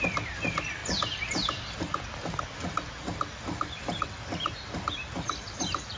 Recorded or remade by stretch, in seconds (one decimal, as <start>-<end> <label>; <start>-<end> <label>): 0.0-6.0 recorded